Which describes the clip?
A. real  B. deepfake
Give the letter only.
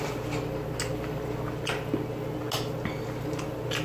A